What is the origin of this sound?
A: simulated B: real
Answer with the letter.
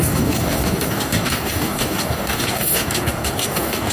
A